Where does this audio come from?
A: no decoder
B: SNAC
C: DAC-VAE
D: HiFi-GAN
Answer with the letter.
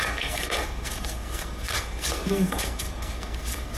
B